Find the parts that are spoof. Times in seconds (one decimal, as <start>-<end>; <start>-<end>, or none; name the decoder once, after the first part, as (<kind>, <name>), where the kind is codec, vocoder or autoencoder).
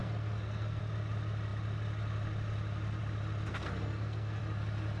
0.0-0.8 (codec, SNAC); 3.5-4.4